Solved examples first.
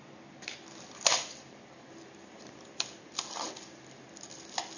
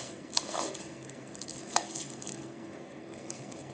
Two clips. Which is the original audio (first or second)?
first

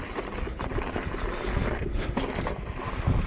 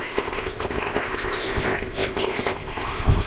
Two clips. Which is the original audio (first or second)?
first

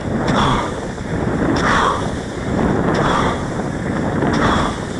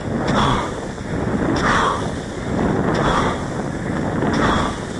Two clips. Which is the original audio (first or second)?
second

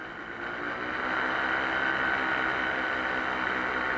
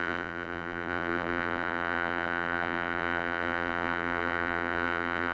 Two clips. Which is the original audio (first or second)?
first